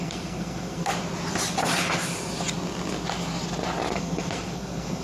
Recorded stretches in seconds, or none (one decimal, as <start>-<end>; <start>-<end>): 0.9-3.9